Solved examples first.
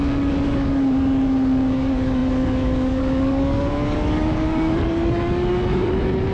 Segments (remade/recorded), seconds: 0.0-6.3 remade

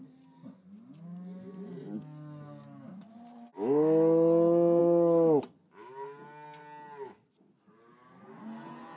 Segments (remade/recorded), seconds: 0.0-4.8 recorded; 4.8-5.4 remade; 5.4-9.0 recorded

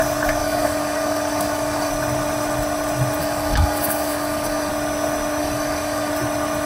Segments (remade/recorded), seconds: 0.0-0.4 recorded; 0.4-1.9 remade; 1.9-3.2 recorded; 3.2-4.7 remade; 4.7-5.4 recorded; 5.4-6.1 remade; 6.1-6.7 recorded

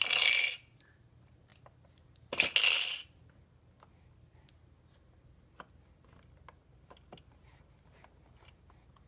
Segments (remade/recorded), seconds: 0.0-9.1 recorded